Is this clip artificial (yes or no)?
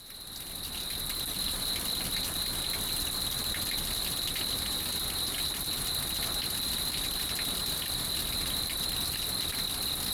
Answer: no